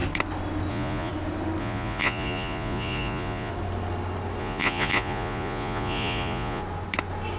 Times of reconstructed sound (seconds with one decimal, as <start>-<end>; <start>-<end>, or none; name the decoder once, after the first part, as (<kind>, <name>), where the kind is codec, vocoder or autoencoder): 0.7-1.1 (vocoder, Vocos); 1.6-3.5; 4.4-6.6